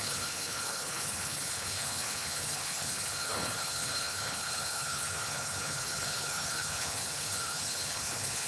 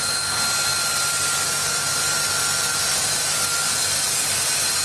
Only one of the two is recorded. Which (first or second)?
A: second